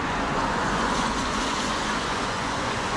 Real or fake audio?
fake